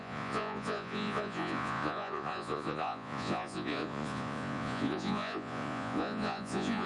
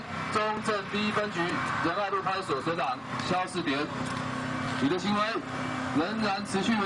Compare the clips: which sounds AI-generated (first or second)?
first